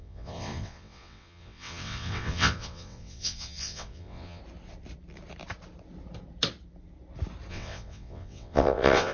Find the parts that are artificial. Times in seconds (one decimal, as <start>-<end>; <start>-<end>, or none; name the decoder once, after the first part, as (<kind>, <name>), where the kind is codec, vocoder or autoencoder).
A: 0.0-4.4 (vocoder, WaveNeXt); 7.5-9.1